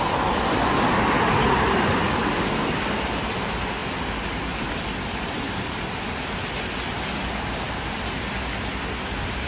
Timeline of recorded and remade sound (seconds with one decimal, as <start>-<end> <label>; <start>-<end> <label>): 0.0-9.5 recorded